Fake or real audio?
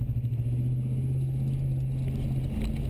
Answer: real